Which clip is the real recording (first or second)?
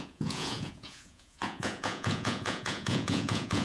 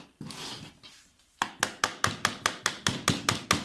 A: second